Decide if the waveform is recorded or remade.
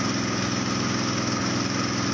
recorded